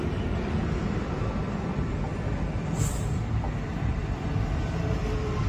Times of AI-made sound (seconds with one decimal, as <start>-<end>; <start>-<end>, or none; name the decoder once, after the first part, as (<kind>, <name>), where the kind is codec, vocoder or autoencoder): none